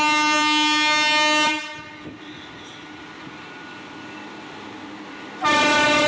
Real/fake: real